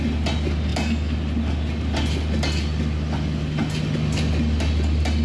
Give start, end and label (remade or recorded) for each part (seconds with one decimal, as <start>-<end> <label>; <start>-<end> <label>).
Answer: 0.0-5.2 recorded